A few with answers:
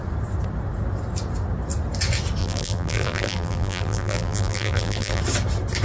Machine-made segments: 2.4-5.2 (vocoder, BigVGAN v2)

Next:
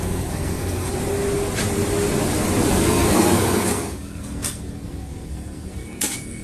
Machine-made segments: 0.0-0.9 (codec, SNAC); 2.7-6.4

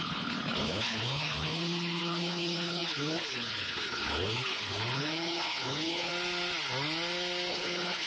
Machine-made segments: 0.0-6.1 (codec, HILCodec); 7.5-8.1

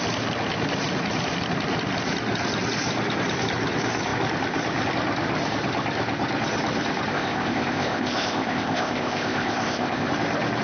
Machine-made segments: 7.1-10.1 (codec, ZipCodec)

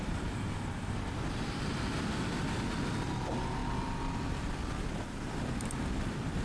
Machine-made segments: none